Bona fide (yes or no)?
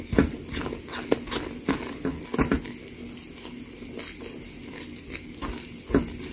yes